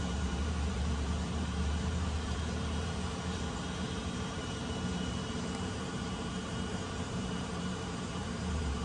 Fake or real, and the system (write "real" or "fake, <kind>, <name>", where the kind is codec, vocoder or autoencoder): fake, vocoder, BigVGAN v2